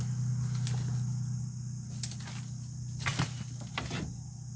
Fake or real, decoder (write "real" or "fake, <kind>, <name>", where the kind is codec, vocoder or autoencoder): real